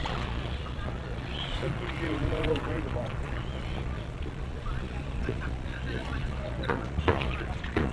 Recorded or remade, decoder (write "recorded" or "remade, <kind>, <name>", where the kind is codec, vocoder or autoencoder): remade, vocoder, Vocos